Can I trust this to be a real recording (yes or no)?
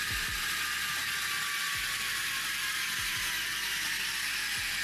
yes